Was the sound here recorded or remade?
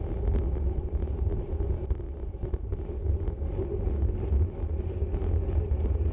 recorded